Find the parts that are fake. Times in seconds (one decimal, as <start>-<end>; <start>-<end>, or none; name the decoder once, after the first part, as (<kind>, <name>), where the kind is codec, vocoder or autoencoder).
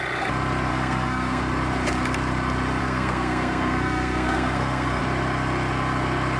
0.7-1.4 (codec, SNAC); 2.8-5.0